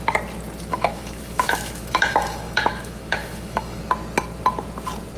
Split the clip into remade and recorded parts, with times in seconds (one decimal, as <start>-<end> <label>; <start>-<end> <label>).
0.0-0.7 recorded; 0.7-3.8 remade; 3.8-5.2 recorded